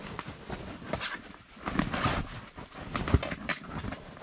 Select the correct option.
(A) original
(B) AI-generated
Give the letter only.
A